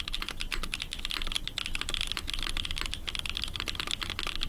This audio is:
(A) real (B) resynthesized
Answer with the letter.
A